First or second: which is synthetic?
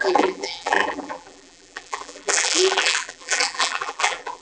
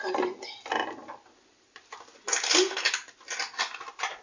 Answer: first